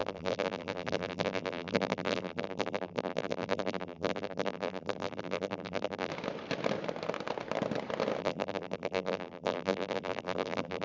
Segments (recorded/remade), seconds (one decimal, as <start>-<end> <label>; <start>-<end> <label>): 0.0-6.1 remade; 6.1-8.2 recorded; 8.2-10.8 remade